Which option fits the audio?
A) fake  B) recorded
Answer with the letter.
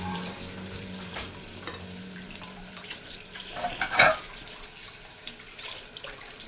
A